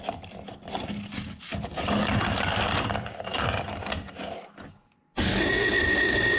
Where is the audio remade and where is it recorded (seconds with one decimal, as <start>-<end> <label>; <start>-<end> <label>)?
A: 0.0-6.4 recorded